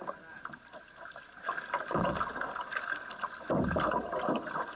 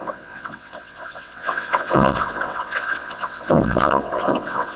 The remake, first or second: second